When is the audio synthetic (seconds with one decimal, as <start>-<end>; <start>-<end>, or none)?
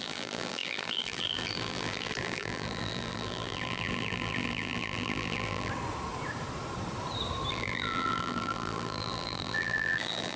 0.0-5.7; 7.5-10.4